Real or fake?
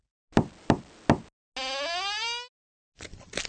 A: real